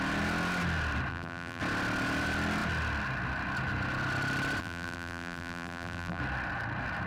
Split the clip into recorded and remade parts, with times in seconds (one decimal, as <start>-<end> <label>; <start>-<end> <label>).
0.0-1.1 recorded; 1.1-1.6 remade; 1.6-4.6 recorded; 4.6-6.2 remade; 6.2-7.1 recorded